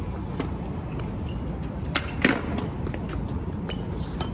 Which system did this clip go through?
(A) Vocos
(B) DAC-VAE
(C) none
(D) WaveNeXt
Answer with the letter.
C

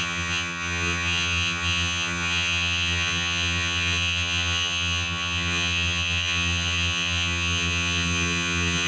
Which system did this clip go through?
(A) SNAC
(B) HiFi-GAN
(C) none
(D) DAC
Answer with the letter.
B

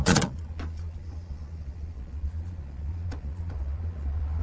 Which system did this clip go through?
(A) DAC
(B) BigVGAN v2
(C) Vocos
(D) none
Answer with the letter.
C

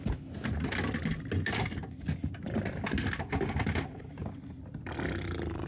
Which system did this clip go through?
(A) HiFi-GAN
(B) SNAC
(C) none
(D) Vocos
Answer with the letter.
C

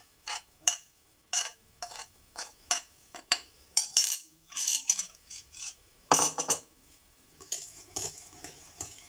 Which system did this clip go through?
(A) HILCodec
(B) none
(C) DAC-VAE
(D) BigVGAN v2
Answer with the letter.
C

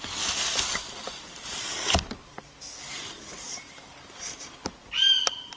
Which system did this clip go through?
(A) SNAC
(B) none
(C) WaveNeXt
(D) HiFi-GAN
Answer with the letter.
B